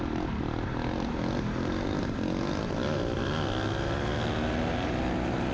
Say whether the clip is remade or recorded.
recorded